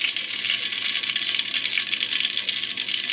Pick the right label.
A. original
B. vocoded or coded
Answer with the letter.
A